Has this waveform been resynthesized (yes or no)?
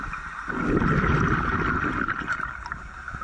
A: no